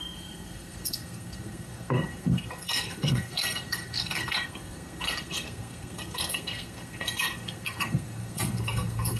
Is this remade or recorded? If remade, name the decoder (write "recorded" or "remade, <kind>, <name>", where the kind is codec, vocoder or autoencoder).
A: remade, codec, SNAC